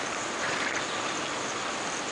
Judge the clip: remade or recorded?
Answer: recorded